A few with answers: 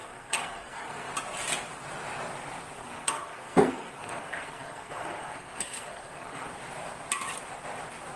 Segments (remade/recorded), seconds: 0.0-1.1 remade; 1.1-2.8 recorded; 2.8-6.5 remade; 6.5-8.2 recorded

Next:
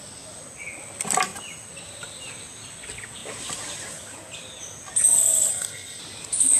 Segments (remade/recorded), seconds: 0.0-5.5 recorded; 5.5-6.0 remade; 6.0-6.6 recorded